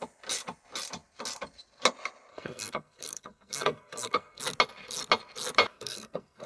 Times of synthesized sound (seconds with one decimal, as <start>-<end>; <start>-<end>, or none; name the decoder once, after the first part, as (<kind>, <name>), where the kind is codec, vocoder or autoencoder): 2.3-4.4 (codec, SNAC); 5.7-6.5